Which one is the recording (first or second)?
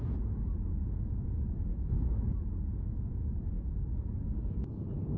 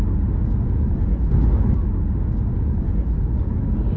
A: second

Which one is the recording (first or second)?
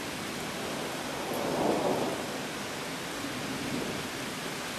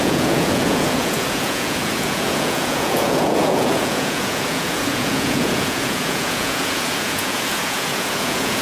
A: first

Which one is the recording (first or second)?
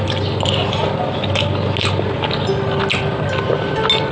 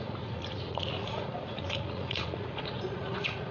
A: first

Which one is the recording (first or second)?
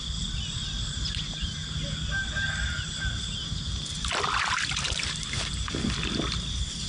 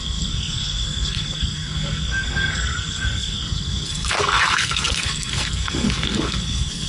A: first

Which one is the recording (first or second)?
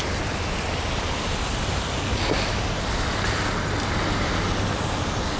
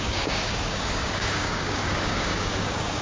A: first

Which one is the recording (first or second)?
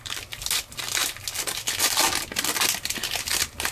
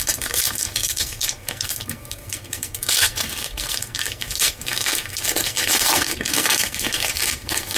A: first